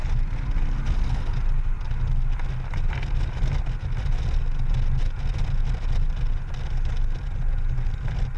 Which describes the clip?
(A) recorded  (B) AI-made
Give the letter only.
A